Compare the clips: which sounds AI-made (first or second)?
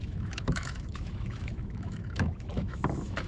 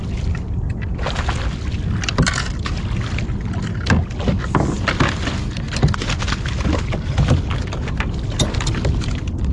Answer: first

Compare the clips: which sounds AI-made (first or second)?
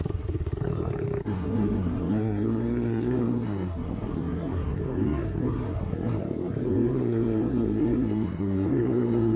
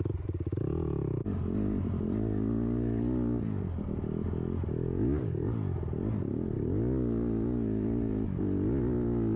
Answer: first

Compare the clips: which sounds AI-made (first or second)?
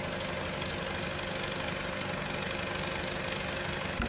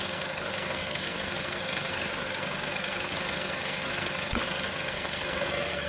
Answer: second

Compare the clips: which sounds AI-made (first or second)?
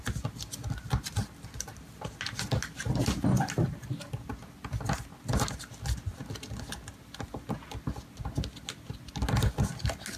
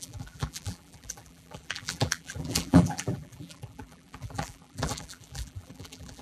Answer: second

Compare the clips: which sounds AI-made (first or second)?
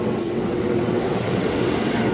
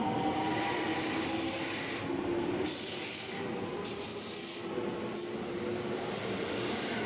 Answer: first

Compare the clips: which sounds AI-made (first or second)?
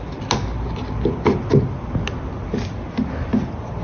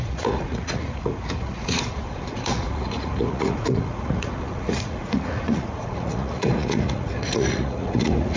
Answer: second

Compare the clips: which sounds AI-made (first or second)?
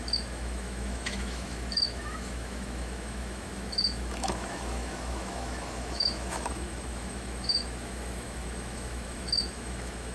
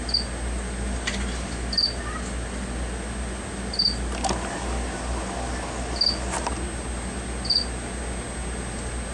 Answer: first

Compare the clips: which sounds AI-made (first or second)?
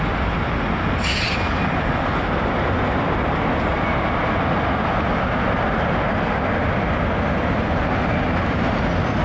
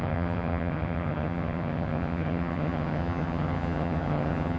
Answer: second